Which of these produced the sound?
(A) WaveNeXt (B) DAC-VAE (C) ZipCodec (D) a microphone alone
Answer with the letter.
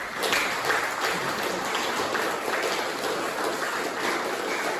D